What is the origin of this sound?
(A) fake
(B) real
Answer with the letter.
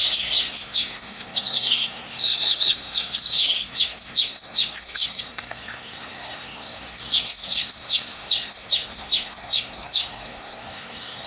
A